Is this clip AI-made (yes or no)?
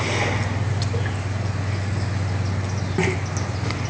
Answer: no